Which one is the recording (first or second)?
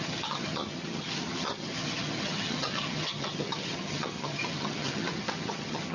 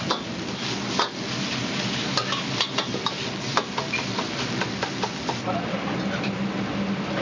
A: second